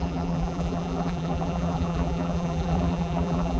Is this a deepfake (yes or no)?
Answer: yes